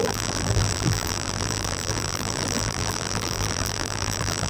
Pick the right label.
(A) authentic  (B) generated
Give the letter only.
B